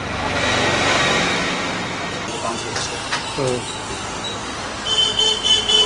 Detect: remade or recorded recorded